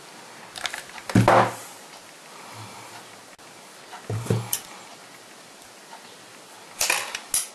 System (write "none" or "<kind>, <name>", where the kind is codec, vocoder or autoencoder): none